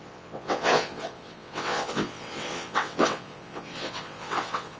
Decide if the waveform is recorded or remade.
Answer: remade